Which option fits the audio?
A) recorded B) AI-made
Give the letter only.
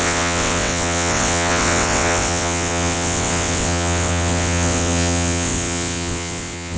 B